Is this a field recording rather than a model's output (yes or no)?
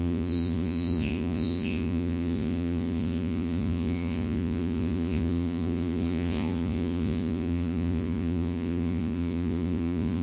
no